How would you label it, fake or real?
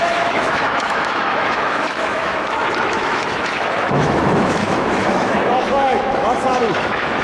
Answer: fake